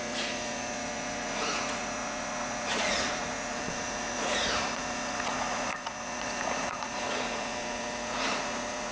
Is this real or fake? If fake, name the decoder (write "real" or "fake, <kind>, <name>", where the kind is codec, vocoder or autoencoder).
fake, vocoder, Vocos